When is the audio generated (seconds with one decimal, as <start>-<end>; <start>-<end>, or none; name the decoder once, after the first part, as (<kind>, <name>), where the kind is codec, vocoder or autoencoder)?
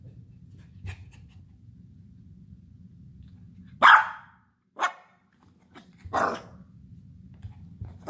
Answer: none